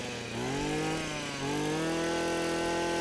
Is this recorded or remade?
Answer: recorded